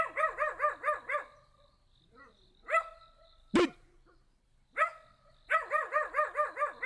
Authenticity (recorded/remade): recorded